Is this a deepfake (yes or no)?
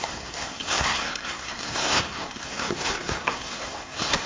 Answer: yes